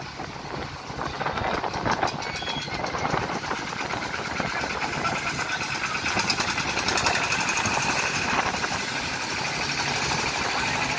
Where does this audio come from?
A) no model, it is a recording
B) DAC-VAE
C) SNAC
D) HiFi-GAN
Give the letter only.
A